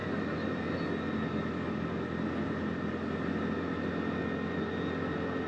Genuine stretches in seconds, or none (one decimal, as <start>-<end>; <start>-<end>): 0.8-5.5